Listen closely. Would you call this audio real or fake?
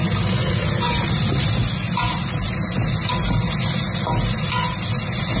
real